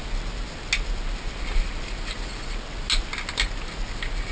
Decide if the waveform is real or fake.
real